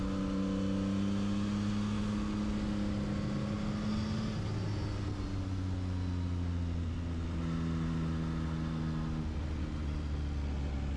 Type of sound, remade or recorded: recorded